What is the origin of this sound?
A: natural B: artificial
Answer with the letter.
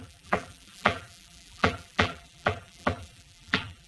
B